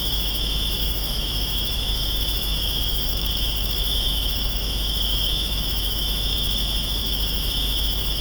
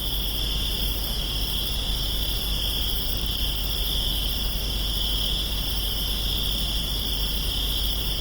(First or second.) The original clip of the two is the second